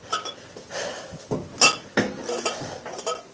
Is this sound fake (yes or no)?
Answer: no